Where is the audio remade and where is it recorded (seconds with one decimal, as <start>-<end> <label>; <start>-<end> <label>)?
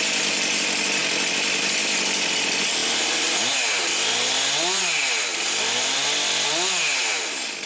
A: 0.0-7.7 recorded